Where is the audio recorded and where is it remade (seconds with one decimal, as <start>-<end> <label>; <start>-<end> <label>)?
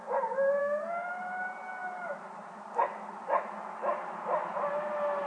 0.0-0.6 recorded; 0.6-1.1 remade; 1.1-5.3 recorded